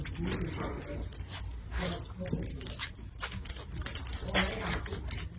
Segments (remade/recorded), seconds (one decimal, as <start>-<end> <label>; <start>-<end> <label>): 0.0-2.5 recorded; 2.5-3.5 remade; 3.5-5.4 recorded